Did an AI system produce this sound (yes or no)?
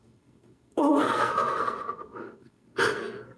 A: yes